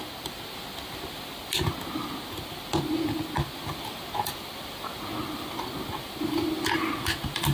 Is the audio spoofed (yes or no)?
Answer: no